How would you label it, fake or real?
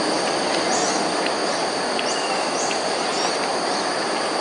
real